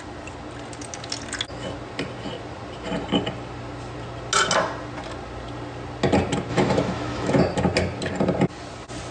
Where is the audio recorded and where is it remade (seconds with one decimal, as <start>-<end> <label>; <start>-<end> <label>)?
0.0-6.5 recorded; 6.5-7.4 remade; 7.4-9.1 recorded